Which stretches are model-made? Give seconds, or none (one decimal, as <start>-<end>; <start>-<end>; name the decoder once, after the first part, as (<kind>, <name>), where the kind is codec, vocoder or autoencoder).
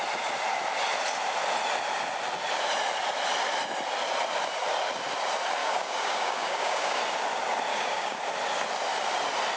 5.6-7.0 (codec, DAC); 7.7-8.2